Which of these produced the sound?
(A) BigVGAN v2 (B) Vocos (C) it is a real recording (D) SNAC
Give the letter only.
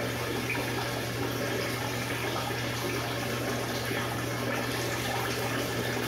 C